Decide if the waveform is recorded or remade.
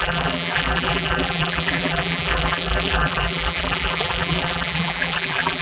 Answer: remade